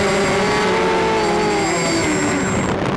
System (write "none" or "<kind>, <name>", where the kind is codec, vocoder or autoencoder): none